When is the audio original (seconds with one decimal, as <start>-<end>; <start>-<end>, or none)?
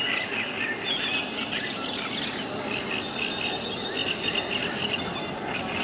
0.0-5.8